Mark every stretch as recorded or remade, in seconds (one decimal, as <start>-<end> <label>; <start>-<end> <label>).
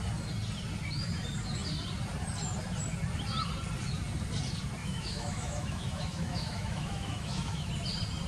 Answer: 0.0-4.8 recorded; 4.8-7.7 remade; 7.7-8.3 recorded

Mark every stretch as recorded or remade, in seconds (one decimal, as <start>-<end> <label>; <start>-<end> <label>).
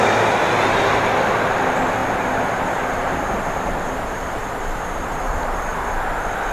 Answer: 0.0-2.0 recorded; 2.0-5.9 remade; 5.9-6.5 recorded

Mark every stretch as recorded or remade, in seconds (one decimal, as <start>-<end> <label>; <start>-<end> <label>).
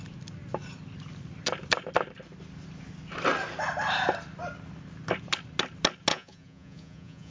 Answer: 0.0-6.1 recorded; 6.1-7.3 remade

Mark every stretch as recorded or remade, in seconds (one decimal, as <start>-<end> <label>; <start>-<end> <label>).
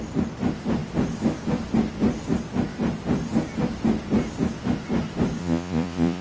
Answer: 0.0-5.4 recorded; 5.4-6.2 remade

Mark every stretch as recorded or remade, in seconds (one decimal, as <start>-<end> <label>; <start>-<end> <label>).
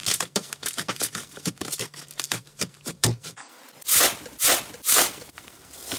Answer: 0.0-3.6 remade; 3.6-4.9 recorded; 4.9-6.0 remade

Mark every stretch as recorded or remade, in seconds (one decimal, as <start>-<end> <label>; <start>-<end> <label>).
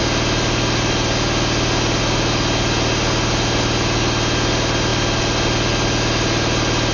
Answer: 0.0-6.9 recorded